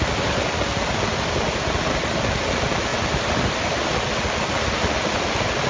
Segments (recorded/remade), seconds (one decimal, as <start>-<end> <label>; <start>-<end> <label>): 0.0-5.7 recorded